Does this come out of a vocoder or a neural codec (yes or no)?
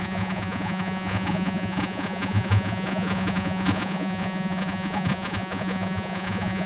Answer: yes